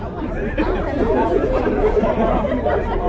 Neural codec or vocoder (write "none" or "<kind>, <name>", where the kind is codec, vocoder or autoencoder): none